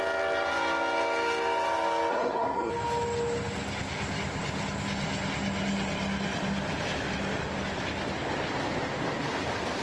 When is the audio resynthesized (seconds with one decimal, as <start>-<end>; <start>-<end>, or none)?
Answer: 2.1-2.7